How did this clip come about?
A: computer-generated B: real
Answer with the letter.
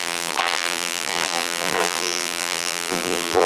A